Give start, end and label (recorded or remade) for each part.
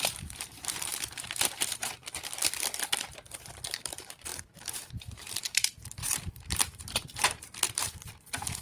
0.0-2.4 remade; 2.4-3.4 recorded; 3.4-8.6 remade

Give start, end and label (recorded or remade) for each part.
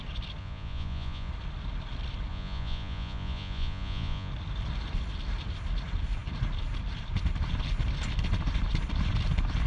0.0-0.4 recorded; 0.4-1.3 remade; 1.3-2.3 recorded; 2.3-4.3 remade; 4.3-9.7 recorded